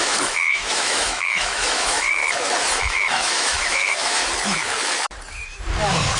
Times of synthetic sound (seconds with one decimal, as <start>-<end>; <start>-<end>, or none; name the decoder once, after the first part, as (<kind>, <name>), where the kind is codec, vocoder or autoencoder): 0.0-2.2 (autoencoder, DAC-VAE); 2.8-4.2